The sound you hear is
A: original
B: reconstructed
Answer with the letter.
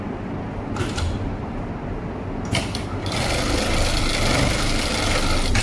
A